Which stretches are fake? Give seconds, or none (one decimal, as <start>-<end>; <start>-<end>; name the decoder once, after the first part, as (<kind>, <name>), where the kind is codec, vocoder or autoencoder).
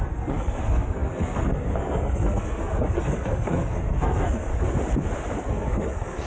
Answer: 0.0-4.5 (codec, SNAC); 5.5-6.3